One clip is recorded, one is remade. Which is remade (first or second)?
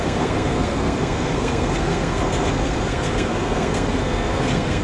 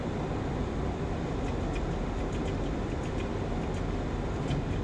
first